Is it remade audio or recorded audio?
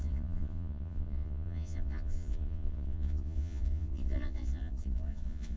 remade